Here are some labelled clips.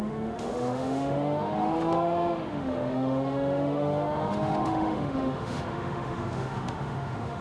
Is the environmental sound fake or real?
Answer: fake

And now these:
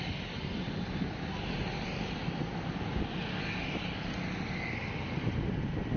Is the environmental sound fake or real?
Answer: real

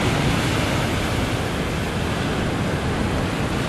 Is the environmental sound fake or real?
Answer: real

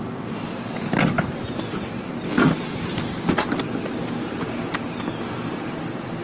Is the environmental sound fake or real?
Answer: real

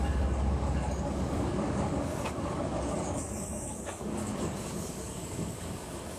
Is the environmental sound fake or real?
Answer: fake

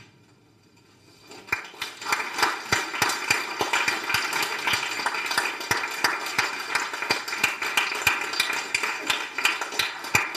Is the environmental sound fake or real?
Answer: real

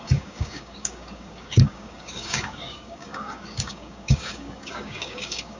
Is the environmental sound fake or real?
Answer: fake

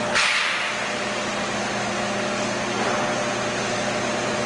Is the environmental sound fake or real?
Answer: real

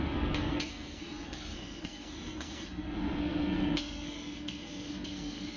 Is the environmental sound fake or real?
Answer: fake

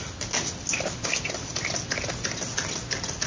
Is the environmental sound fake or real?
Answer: real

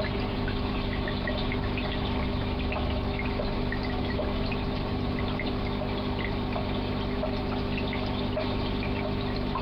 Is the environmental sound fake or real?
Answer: real